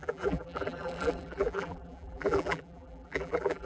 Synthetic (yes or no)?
yes